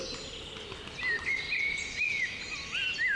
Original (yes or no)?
yes